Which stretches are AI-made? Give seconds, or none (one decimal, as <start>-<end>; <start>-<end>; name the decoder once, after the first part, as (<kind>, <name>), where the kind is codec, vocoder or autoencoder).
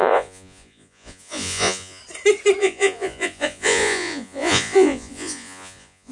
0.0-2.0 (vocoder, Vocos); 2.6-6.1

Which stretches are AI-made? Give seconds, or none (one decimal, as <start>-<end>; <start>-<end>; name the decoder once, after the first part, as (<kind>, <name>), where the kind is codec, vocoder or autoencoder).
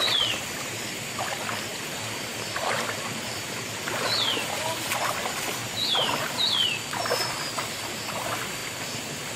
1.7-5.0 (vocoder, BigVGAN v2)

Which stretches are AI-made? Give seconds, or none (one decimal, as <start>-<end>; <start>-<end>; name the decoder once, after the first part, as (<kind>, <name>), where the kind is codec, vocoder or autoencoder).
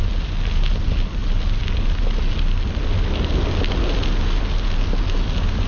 none